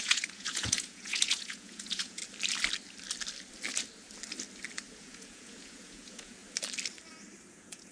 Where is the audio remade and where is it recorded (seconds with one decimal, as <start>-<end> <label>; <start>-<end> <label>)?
0.0-2.2 remade; 2.2-4.9 recorded; 4.9-6.4 remade; 6.4-7.5 recorded; 7.5-7.9 remade